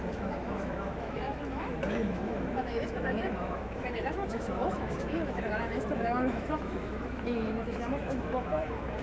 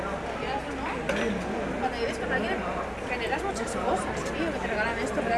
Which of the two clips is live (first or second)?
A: second